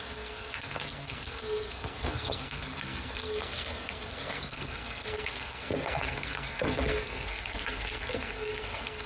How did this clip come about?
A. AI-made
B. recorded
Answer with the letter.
A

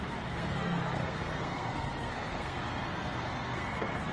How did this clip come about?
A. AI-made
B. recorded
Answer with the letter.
A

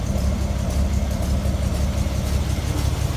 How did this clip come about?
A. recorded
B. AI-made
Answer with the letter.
A